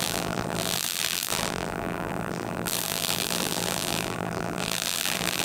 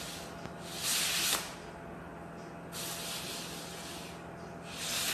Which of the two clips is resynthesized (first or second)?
first